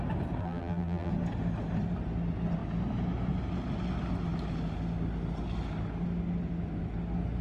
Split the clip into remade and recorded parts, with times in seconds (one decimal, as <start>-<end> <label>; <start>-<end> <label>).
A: 0.0-0.4 recorded; 0.4-1.1 remade; 1.1-7.4 recorded